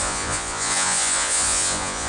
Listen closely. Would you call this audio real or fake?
fake